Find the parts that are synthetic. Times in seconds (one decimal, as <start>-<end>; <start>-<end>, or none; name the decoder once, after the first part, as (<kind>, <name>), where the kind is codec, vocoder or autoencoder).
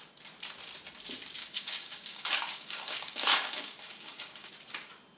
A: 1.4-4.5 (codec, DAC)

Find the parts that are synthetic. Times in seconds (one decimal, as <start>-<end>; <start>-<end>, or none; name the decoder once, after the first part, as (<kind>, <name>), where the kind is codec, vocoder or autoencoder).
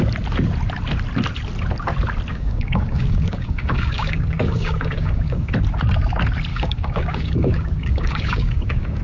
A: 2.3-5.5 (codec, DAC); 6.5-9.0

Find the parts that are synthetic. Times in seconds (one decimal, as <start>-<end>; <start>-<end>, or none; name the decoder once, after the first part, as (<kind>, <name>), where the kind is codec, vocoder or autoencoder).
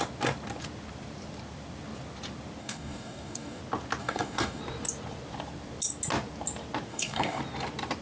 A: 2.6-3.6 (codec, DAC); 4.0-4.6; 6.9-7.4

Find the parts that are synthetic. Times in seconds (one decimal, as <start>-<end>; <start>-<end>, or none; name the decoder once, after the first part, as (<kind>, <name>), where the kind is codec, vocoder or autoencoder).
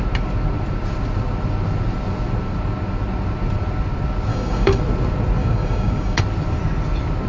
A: 4.3-4.8 (codec, DAC); 5.4-6.2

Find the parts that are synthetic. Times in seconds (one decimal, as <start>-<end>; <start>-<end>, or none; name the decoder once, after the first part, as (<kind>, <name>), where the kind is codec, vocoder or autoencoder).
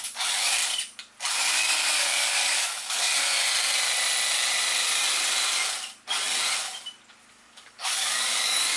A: 0.0-0.6 (codec, DAC); 1.3-3.1; 7.3-8.8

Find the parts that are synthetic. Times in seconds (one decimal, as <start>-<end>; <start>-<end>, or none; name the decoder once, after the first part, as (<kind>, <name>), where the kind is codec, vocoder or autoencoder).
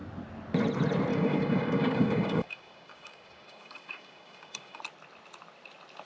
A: 1.1-4.8 (codec, DAC)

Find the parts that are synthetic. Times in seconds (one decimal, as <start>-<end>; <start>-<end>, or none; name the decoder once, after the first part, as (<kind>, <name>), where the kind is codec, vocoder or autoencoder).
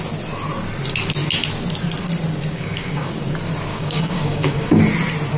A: 2.5-3.1 (codec, DAC); 3.7-4.8